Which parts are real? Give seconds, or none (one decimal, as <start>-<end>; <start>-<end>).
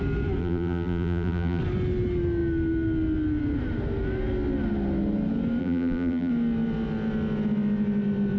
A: 0.0-0.4; 1.6-5.6; 6.3-8.4